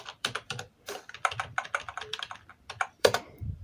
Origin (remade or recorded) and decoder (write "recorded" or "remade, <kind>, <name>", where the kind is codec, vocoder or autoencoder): remade, vocoder, BigVGAN v2